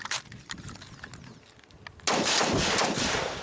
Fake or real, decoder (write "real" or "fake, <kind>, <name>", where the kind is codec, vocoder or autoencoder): real